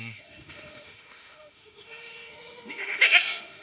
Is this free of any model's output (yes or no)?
no